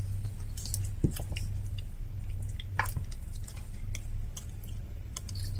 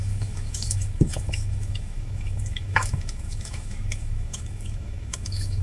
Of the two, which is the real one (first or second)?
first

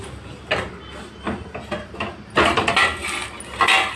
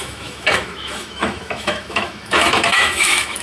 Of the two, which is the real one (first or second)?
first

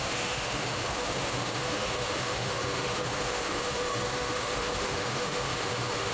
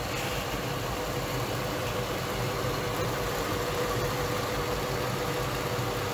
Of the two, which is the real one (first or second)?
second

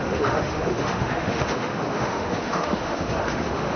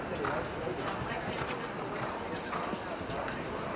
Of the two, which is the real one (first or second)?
second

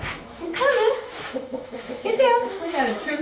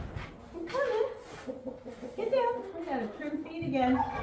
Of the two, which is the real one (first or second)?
second